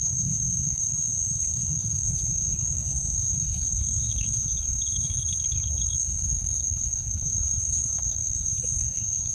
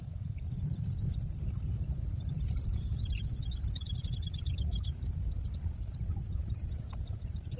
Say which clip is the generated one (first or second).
first